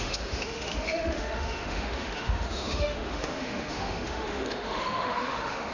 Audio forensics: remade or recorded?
remade